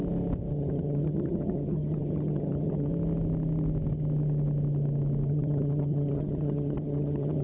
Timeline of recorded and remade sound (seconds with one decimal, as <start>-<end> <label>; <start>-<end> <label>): 0.0-0.5 recorded; 0.5-2.9 remade; 2.9-5.3 recorded; 5.3-7.4 remade